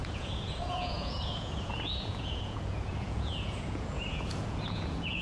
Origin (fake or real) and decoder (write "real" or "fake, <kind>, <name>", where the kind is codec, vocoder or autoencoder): fake, vocoder, Vocos